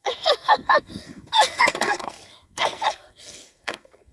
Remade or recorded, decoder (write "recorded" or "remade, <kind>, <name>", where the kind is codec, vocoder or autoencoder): remade, codec, SNAC